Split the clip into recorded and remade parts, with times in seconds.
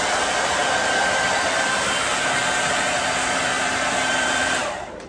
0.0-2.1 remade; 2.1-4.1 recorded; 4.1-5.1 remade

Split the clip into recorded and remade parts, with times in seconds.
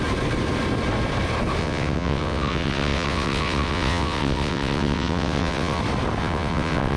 0.0-1.6 recorded; 1.6-5.8 remade; 5.8-6.2 recorded; 6.2-7.0 remade